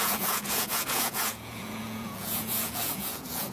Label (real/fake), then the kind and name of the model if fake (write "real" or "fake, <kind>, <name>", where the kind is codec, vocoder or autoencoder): fake, vocoder, Vocos